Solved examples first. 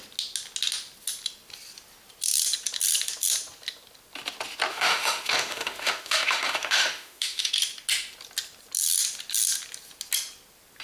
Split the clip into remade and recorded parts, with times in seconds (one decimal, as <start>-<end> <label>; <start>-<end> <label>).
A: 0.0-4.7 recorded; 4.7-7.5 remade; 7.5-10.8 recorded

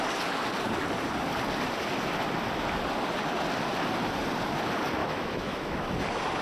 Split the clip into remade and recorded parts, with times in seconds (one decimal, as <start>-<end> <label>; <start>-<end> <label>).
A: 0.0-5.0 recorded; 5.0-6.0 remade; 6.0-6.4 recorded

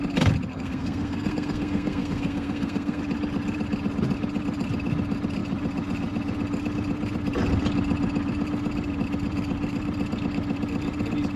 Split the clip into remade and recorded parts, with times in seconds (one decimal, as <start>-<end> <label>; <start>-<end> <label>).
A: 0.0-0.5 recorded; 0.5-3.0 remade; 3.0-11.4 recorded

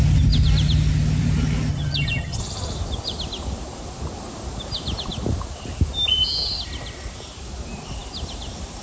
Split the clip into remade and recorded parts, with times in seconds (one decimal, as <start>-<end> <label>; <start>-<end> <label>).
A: 0.0-1.7 recorded; 1.7-2.4 remade; 2.4-8.8 recorded

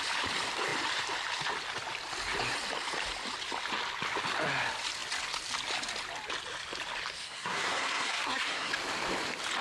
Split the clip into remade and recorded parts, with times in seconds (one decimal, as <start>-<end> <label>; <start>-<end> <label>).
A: 0.0-7.2 recorded; 7.2-8.7 remade; 8.7-9.6 recorded